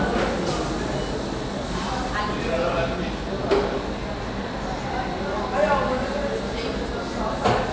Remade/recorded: recorded